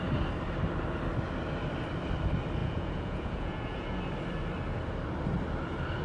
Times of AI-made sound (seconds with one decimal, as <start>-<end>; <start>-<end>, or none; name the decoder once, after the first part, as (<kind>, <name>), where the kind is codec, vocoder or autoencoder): 2.6-4.0 (vocoder, Vocos)

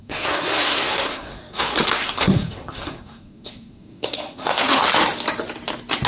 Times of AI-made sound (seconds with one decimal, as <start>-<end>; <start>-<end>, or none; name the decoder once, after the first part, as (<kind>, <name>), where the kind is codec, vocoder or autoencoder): 0.0-4.8 (codec, SNAC)